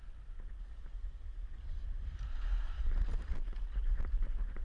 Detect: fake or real real